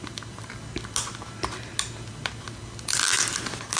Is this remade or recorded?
recorded